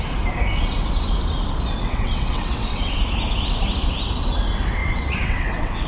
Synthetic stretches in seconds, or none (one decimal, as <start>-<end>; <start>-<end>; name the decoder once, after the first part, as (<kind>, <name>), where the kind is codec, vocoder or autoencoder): 1.8-3.0 (vocoder, WaveNeXt); 4.8-5.9